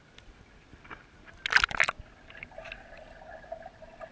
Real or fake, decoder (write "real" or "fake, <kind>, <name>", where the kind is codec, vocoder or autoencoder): real